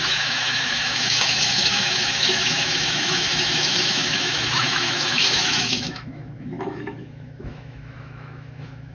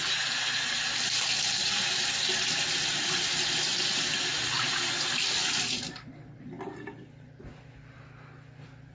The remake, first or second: first